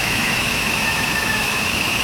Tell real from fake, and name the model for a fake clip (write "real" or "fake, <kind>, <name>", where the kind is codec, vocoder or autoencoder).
fake, autoencoder, DAC-VAE